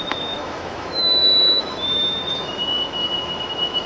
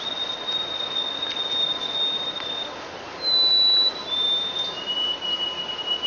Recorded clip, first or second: second